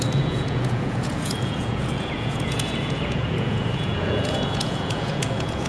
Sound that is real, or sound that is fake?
fake